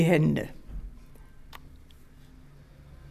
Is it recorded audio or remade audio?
recorded